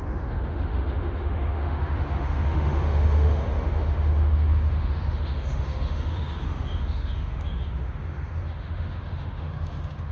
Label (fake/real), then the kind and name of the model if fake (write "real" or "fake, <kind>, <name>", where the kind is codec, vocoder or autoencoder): fake, autoencoder, DAC-VAE